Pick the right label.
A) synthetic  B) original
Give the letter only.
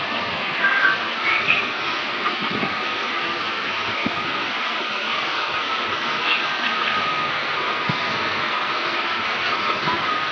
A